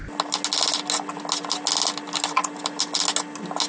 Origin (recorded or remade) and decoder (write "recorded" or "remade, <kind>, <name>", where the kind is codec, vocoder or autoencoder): recorded